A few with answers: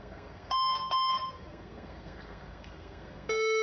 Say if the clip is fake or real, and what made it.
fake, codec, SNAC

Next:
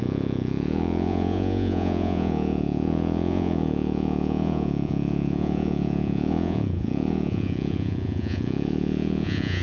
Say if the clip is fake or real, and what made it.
fake, vocoder, Vocos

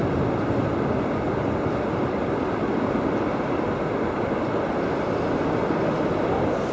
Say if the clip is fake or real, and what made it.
real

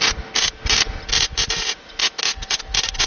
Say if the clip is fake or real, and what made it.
real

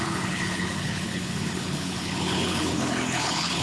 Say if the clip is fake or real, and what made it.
fake, codec, HILCodec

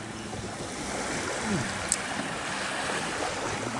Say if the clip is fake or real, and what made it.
real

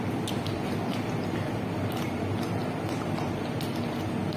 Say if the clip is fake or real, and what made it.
real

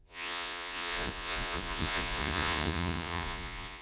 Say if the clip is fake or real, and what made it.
fake, vocoder, Vocos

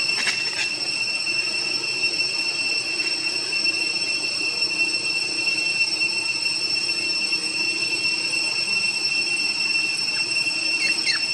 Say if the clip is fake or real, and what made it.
real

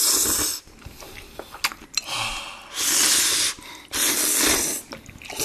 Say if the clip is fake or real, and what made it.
real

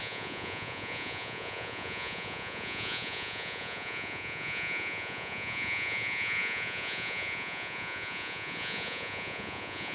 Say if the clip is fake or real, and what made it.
fake, vocoder, Vocos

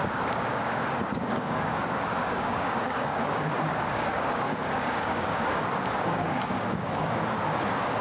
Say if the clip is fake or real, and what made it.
fake, codec, DAC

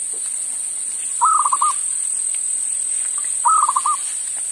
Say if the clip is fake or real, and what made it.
real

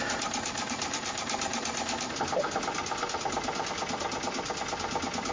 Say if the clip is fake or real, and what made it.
real